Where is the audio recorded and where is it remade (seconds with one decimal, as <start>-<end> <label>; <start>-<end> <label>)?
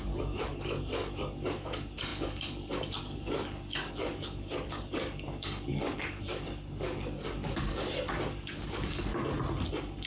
0.0-9.1 remade; 9.1-10.1 recorded